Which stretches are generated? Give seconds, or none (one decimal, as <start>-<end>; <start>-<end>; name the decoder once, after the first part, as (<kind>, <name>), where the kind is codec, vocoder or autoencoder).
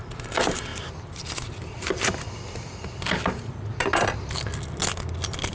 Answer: none